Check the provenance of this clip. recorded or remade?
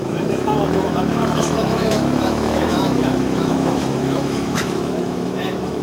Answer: remade